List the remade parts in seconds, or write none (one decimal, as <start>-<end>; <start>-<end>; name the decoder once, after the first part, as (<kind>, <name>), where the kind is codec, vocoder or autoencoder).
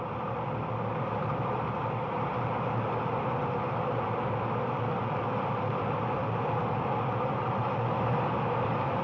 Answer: none